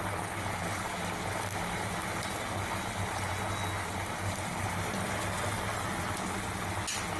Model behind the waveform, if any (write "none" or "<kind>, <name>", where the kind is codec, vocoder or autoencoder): none